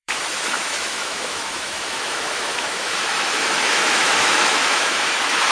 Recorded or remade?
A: remade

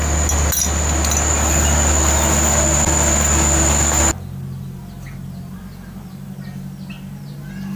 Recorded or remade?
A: recorded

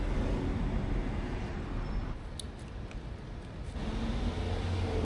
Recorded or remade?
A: recorded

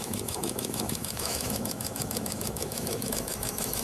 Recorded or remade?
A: remade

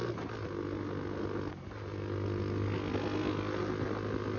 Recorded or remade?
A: recorded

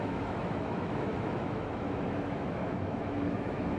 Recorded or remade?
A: remade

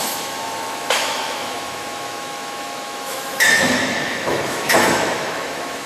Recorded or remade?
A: remade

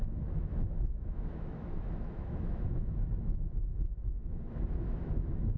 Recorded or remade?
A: remade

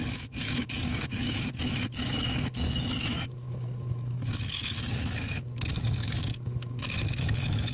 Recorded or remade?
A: remade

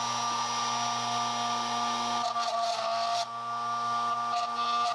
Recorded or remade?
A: recorded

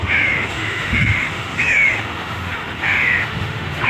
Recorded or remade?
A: remade